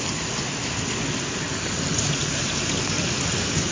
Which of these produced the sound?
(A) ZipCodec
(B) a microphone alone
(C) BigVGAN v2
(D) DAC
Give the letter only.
B